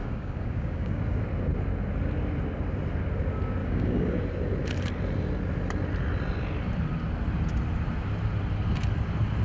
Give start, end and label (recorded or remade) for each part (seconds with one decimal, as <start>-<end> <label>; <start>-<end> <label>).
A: 0.0-1.0 remade; 1.0-3.6 recorded; 3.6-4.2 remade; 4.2-9.4 recorded